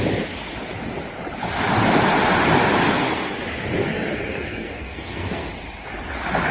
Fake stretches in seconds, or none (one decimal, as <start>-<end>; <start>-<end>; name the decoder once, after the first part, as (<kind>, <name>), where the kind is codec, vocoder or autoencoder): 2.8-3.4 (codec, SNAC); 3.8-5.5